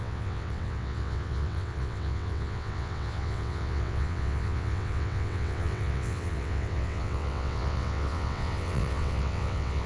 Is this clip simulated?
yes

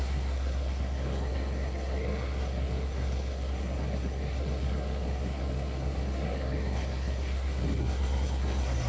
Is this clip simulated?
yes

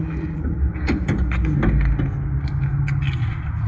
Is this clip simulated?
no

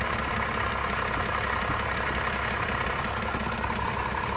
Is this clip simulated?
no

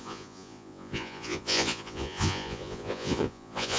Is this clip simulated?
yes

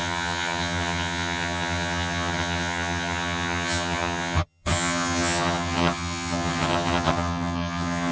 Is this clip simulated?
yes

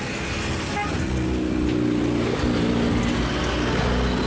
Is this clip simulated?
no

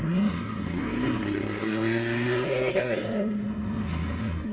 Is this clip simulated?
yes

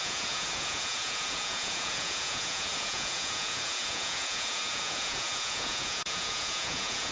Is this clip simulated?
yes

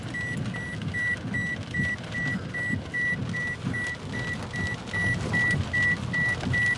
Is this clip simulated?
no